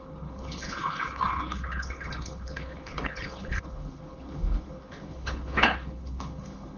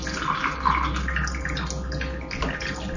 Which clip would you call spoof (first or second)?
first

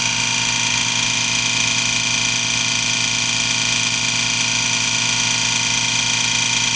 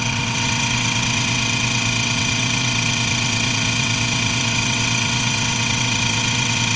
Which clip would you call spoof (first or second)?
second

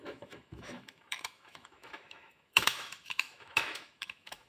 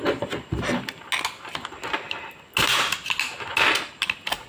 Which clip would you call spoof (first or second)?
first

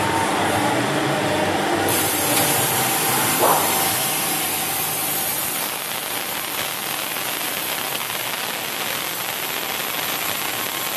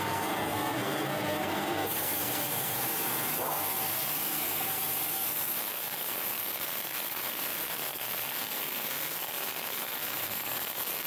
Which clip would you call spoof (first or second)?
second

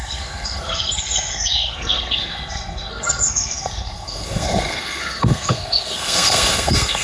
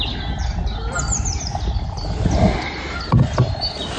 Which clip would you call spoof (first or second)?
first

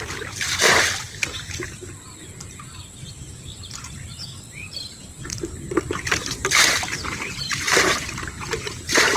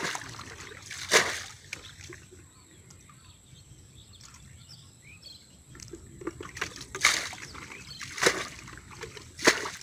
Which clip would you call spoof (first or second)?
first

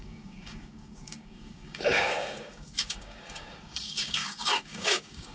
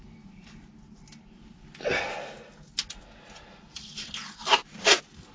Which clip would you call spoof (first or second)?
first